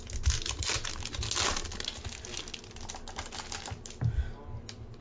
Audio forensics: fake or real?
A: real